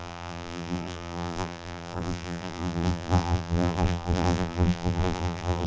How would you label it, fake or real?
fake